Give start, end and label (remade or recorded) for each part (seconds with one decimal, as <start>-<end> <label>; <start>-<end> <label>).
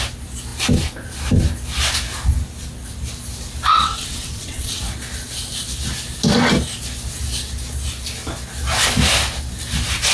0.0-3.7 recorded; 3.7-4.8 remade; 4.8-10.1 recorded